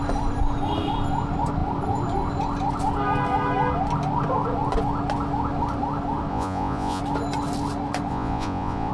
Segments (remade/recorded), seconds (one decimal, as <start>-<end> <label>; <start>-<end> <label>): 0.0-6.3 recorded; 6.3-7.0 remade; 7.0-8.1 recorded; 8.1-8.9 remade